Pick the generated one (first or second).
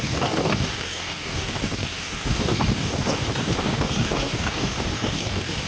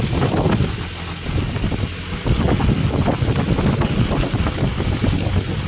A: first